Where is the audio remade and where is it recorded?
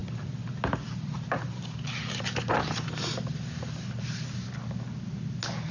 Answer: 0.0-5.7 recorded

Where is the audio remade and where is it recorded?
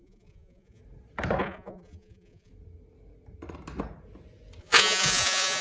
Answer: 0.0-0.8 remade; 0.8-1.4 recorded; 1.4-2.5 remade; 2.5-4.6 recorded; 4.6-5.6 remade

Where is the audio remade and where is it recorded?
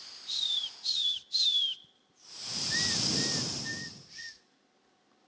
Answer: 0.0-1.7 recorded; 1.7-4.7 remade; 4.7-5.3 recorded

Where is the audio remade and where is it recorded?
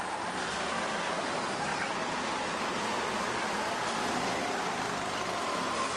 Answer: 0.0-6.0 recorded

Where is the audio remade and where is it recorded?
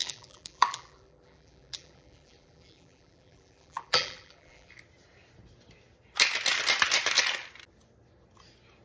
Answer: 0.0-4.7 remade; 4.7-8.8 recorded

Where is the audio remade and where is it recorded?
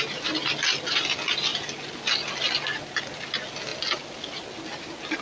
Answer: 0.0-5.2 recorded